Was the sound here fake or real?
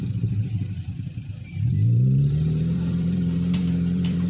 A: fake